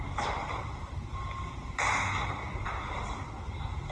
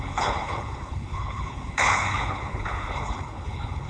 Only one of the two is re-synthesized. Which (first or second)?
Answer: second